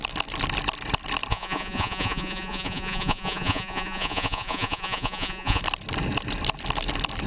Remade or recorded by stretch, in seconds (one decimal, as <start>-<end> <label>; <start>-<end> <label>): 0.0-1.3 recorded; 1.3-5.6 remade; 5.6-7.3 recorded